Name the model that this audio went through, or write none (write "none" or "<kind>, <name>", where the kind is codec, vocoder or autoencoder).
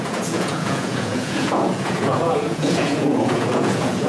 vocoder, Vocos